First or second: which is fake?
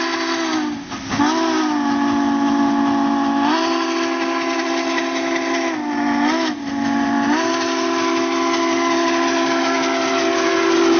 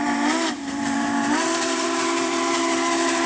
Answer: second